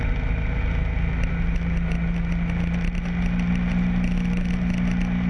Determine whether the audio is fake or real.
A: real